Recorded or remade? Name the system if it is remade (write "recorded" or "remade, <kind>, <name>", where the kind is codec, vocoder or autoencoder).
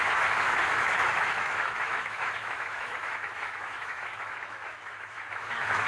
remade, autoencoder, DAC-VAE